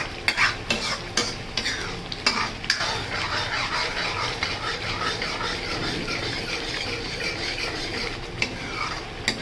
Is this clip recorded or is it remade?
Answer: recorded